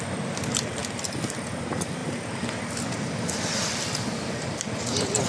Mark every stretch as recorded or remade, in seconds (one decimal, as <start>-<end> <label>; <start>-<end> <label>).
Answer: 0.0-0.8 remade; 0.8-1.6 recorded; 1.6-5.3 remade